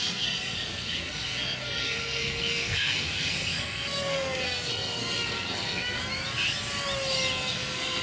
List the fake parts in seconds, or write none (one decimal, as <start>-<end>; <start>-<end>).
0.0-6.0; 7.5-8.0